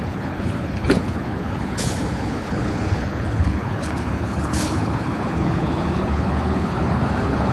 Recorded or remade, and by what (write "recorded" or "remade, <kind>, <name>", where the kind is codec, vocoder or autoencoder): remade, codec, HILCodec